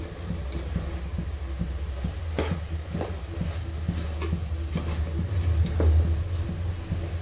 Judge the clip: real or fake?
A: real